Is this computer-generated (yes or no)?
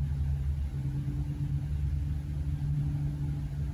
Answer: no